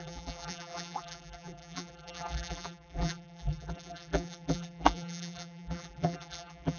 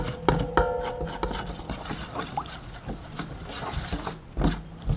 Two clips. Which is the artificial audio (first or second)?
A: first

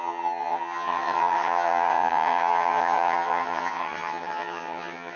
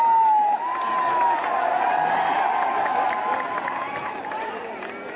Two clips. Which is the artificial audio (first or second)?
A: first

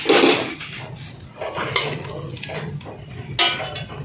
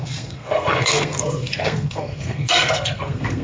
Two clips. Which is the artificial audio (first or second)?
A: second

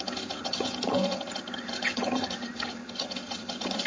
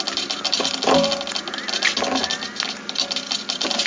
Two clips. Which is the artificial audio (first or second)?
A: first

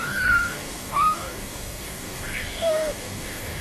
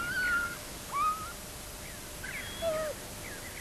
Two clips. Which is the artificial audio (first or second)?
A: first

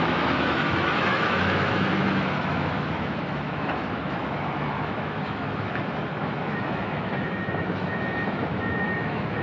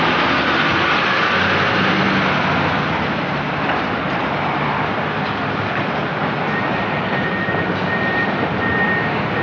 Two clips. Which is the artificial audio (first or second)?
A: first